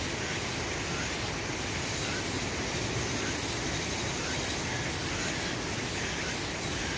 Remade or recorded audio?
recorded